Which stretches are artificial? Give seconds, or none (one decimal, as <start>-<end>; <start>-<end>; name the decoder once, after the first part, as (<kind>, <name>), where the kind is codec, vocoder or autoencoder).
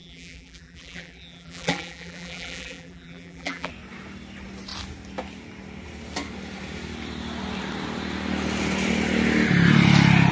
0.0-3.7 (vocoder, BigVGAN v2)